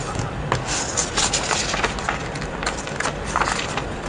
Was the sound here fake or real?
real